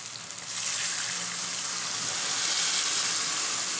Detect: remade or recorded recorded